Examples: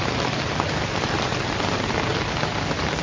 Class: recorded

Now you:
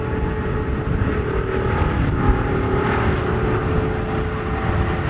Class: recorded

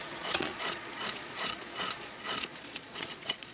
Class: remade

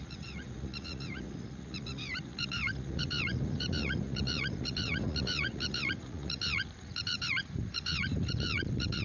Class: remade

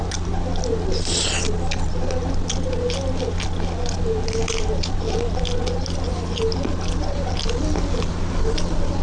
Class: recorded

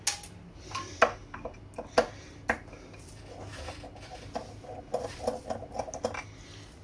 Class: recorded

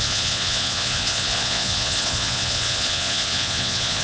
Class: remade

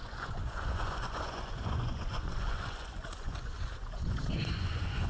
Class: remade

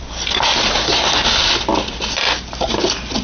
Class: recorded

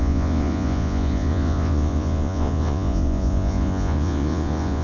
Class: remade